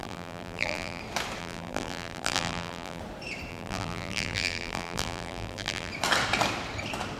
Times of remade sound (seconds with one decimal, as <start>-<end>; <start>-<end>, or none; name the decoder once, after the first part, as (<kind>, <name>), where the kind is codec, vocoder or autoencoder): 0.0-1.0 (vocoder, BigVGAN v2); 1.4-3.0; 3.5-5.9